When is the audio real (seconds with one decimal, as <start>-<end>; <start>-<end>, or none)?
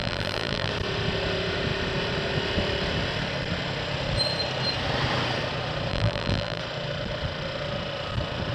0.7-5.9; 6.6-8.5